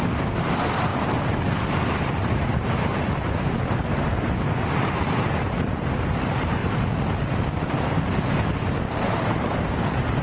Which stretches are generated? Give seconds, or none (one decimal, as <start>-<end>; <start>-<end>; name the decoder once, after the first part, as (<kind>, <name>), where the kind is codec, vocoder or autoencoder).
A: 0.0-6.6 (vocoder, BigVGAN v2); 7.7-10.2